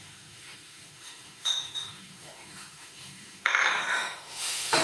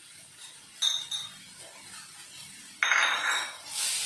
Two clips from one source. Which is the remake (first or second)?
first